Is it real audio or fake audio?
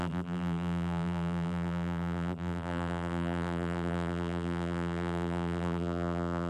fake